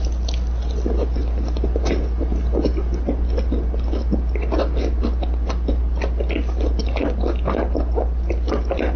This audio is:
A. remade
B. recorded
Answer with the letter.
B